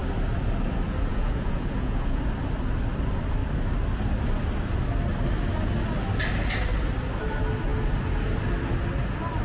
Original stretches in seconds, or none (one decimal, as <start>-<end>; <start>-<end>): 0.0-1.1; 2.2-9.4